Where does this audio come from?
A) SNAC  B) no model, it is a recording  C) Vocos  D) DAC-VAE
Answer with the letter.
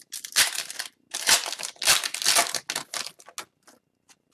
B